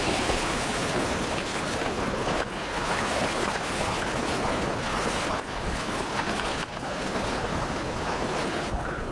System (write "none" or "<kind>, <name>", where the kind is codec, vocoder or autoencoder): codec, HILCodec